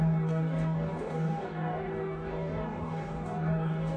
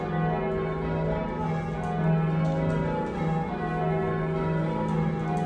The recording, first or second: second